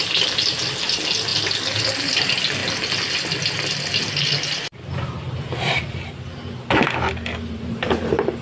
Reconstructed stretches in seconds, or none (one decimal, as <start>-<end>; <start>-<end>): none